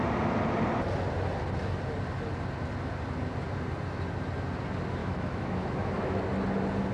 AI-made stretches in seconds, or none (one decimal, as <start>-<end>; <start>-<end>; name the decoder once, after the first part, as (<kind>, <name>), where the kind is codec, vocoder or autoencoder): 5.0-6.2 (autoencoder, DAC-VAE)